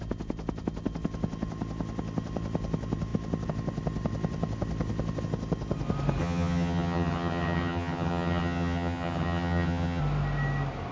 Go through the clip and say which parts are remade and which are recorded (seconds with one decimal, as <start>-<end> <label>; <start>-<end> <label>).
0.0-6.2 recorded; 6.2-10.0 remade; 10.0-10.9 recorded